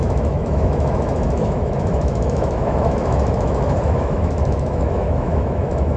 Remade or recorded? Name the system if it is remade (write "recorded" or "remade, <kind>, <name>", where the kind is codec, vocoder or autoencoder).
remade, autoencoder, DAC-VAE